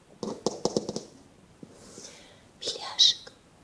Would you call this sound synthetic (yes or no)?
no